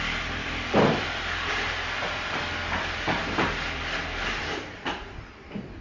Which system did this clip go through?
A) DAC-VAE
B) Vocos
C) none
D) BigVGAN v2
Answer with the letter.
D